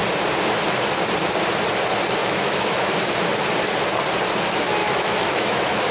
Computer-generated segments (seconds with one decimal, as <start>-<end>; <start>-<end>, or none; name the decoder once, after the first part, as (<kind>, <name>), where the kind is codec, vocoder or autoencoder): 2.2-2.9 (autoencoder, DAC-VAE); 4.8-5.9